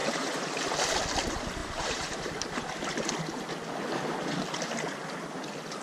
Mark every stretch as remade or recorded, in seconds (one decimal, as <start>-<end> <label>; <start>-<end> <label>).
0.0-0.7 remade; 0.7-1.6 recorded; 1.6-2.7 remade; 2.7-5.8 recorded